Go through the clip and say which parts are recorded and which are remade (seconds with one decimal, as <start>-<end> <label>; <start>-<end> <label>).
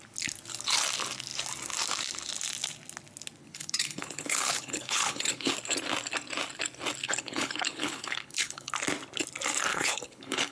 0.0-3.4 recorded; 3.4-5.5 remade; 5.5-7.0 recorded; 7.0-8.7 remade; 8.7-9.7 recorded; 9.7-10.5 remade